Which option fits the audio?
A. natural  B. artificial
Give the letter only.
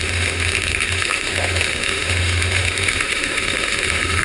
B